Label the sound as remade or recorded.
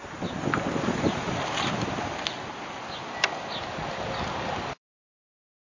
recorded